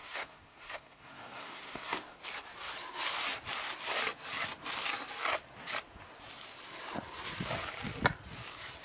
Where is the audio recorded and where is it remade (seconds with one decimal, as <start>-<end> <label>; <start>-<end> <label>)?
0.0-2.2 remade; 2.2-8.8 recorded